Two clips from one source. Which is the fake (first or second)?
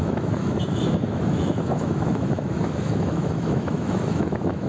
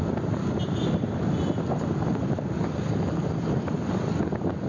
first